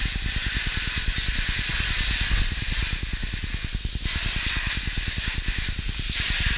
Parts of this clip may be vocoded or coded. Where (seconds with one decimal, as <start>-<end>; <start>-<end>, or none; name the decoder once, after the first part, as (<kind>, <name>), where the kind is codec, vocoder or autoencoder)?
none